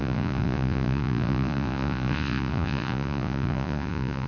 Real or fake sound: fake